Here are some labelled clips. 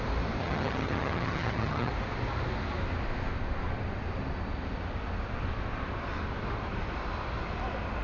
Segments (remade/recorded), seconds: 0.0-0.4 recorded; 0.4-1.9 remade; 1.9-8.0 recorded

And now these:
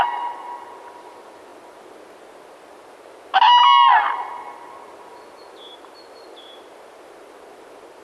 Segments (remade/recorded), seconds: 0.0-8.0 recorded